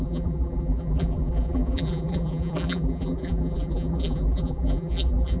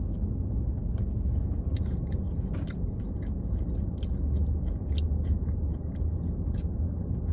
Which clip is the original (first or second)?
second